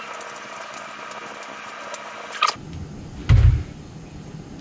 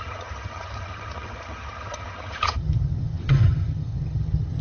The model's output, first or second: second